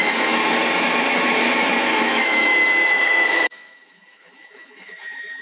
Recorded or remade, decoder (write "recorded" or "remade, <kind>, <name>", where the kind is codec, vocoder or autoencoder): remade, autoencoder, DAC-VAE